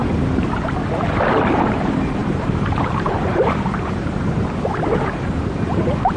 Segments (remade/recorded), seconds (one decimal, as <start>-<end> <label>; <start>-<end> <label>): 0.0-0.7 remade; 0.7-2.2 recorded; 2.2-6.2 remade